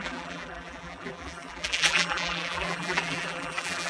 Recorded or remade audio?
remade